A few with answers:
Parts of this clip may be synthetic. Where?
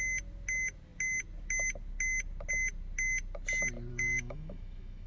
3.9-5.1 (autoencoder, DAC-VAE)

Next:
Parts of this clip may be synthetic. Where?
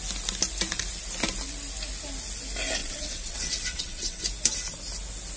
2.8-4.2 (vocoder, WaveNeXt)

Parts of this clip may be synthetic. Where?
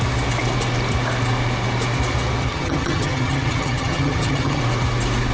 2.5-4.6 (vocoder, HiFi-GAN)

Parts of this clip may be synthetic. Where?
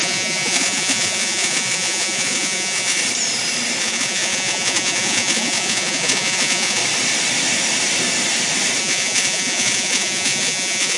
0.0-3.0 (vocoder, Vocos); 3.8-6.8; 8.8-11.0